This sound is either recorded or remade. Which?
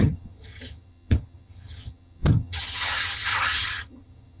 remade